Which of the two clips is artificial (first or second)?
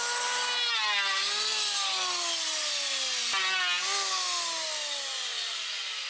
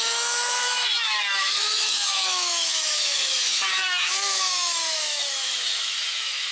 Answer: second